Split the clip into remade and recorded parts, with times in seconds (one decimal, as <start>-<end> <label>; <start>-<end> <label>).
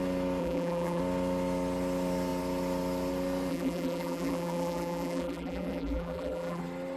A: 0.0-0.4 recorded; 0.4-1.0 remade; 1.0-3.5 recorded; 3.5-6.6 remade; 6.6-7.0 recorded